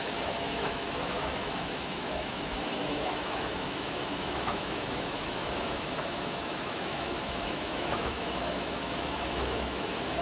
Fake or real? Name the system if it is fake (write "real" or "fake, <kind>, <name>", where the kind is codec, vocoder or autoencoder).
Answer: fake, autoencoder, DAC-VAE